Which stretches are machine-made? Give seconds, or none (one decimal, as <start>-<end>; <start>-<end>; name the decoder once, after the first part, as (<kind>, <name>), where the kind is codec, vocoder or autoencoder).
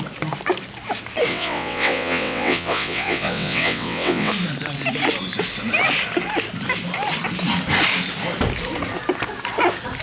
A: 1.3-4.3 (vocoder, WaveNeXt)